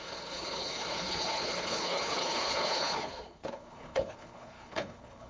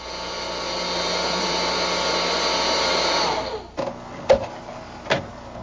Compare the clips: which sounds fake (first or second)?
first